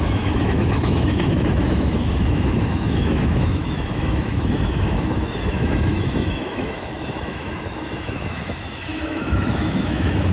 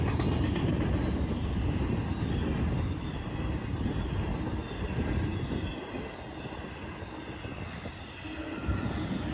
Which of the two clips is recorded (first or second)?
second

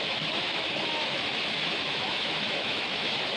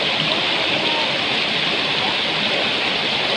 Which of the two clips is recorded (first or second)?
second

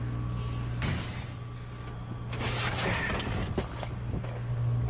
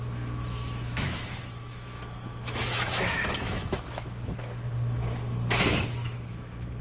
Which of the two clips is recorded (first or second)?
first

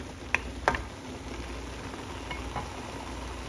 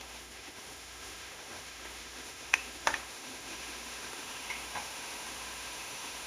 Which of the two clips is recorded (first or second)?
first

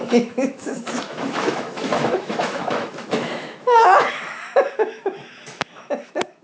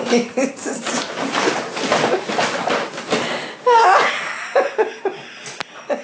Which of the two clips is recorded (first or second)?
second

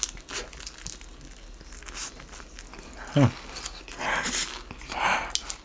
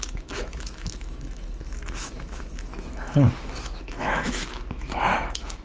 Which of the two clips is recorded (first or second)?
first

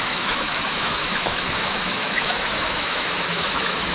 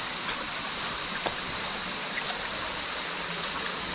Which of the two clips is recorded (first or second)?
second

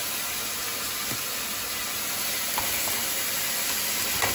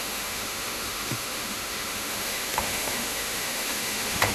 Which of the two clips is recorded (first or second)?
first